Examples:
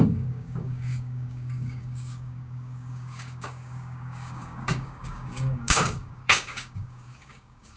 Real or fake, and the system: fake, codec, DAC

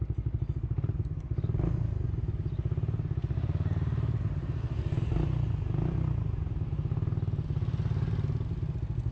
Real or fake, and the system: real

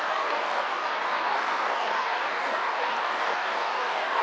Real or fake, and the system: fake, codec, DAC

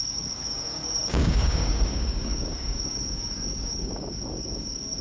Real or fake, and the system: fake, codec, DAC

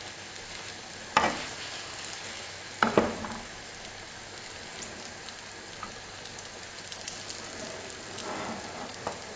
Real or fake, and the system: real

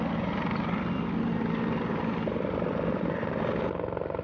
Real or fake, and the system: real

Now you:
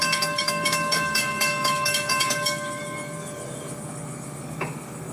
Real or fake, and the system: fake, codec, DAC